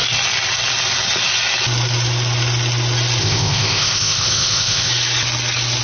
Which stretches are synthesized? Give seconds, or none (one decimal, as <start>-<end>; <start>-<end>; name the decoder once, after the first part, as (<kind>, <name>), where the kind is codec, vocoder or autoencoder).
3.2-4.9 (codec, ZipCodec)